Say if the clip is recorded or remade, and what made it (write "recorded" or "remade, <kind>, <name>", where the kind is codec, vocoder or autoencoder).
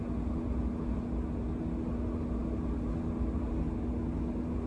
recorded